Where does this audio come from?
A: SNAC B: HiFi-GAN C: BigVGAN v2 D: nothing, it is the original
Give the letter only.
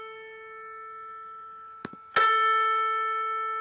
D